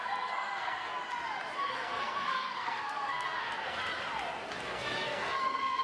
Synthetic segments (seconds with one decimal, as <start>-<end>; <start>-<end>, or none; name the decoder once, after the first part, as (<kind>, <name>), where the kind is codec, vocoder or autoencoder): 0.0-1.0 (codec, SNAC); 1.6-3.8; 4.6-5.8